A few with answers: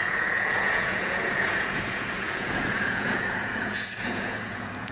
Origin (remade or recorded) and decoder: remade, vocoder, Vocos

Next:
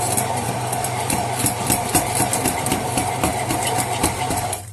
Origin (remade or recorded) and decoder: remade, vocoder, BigVGAN v2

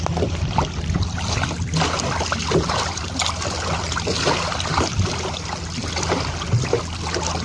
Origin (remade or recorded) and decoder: recorded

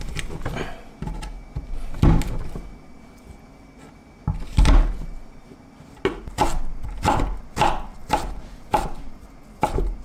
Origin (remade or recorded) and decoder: recorded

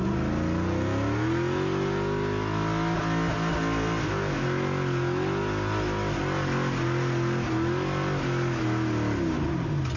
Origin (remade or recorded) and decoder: recorded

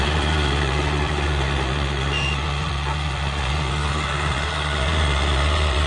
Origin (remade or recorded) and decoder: remade, vocoder, Vocos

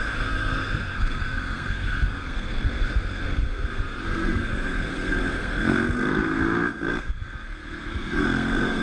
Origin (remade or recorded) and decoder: remade, codec, SNAC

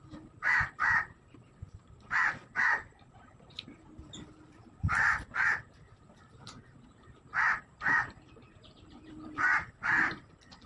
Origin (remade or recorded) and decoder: recorded